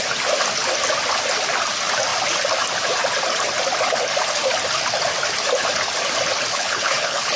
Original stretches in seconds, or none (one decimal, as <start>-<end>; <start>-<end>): 0.0-6.5